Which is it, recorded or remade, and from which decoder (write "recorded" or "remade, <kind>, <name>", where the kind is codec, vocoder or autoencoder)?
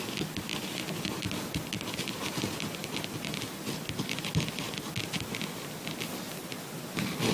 recorded